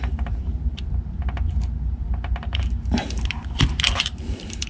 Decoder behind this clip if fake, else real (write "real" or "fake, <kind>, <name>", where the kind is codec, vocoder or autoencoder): fake, vocoder, BigVGAN v2